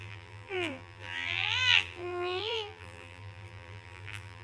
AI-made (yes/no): yes